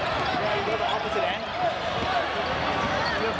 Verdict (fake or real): real